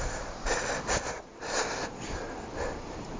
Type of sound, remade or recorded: recorded